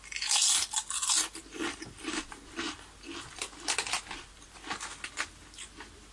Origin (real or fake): real